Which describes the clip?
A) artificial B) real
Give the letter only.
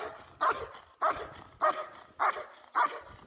B